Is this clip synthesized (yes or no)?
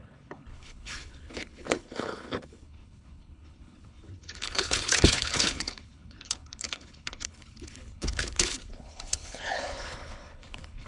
yes